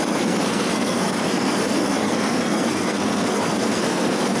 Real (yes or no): no